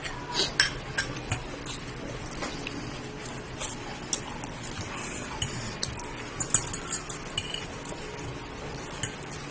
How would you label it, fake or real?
real